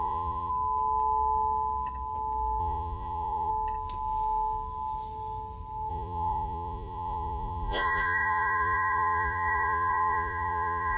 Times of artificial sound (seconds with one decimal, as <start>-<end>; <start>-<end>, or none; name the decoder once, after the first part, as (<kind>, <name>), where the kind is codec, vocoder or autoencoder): 0.0-0.5 (vocoder, Vocos); 2.6-3.5; 5.9-11.0